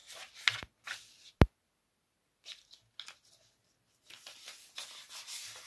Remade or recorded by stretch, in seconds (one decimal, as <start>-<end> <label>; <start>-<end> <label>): 0.0-5.7 recorded

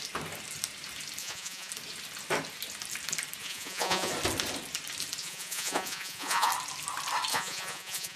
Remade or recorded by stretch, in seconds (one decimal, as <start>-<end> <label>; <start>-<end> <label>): 0.0-1.2 recorded; 1.2-1.7 remade; 1.7-3.4 recorded; 3.4-4.1 remade; 4.1-5.2 recorded; 5.2-6.5 remade; 6.5-7.3 recorded; 7.3-8.2 remade

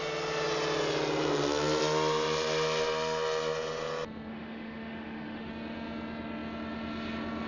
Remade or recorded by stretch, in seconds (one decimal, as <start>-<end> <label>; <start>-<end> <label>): 0.0-4.3 recorded; 4.3-5.5 remade; 5.5-7.5 recorded